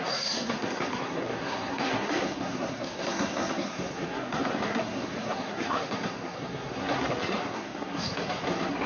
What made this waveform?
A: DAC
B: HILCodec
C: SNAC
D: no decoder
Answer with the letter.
C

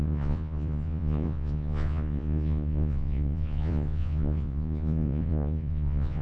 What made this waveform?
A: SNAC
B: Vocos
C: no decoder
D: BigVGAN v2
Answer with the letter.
B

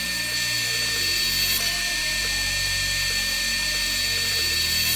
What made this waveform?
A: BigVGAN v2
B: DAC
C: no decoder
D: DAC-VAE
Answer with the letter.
A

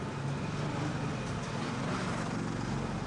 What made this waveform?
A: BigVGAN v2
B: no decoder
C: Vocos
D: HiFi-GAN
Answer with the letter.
B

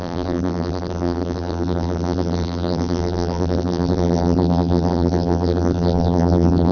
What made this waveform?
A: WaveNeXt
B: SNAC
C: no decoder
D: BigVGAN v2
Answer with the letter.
D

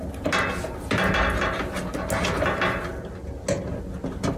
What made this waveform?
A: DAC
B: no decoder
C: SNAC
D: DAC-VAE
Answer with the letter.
B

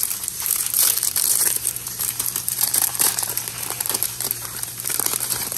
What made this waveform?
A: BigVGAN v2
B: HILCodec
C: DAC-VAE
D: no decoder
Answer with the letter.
A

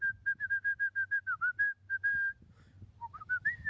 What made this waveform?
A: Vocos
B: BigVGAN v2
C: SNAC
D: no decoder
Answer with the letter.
D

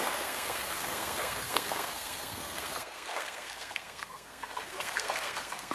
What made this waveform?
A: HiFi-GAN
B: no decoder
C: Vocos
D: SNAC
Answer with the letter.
D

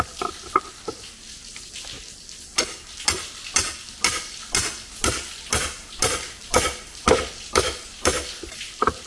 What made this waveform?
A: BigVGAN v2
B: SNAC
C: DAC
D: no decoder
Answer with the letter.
D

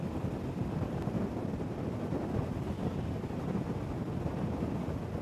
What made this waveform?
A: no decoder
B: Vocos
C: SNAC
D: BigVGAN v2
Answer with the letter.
A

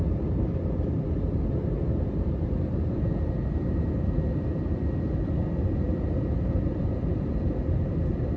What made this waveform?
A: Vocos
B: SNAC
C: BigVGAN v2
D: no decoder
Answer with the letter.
C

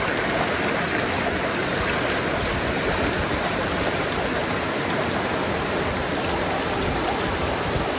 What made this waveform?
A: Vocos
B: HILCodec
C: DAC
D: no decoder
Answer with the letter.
D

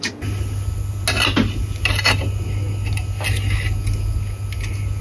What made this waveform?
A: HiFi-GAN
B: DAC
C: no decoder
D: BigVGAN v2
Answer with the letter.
C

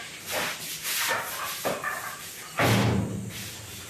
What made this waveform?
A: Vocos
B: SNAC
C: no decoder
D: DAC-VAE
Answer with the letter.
C